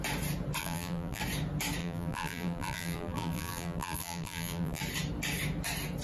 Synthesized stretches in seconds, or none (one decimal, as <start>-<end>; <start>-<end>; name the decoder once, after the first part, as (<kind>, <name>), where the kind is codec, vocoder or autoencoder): 0.6-1.2 (vocoder, BigVGAN v2); 1.8-4.8